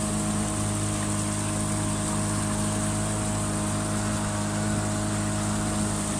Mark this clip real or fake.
real